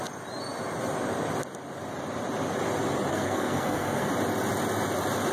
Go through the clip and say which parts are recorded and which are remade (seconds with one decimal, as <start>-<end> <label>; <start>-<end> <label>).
0.0-3.1 recorded; 3.1-4.1 remade; 4.1-5.3 recorded